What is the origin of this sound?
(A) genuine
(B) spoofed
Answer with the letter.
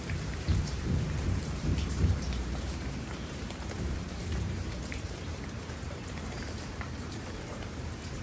B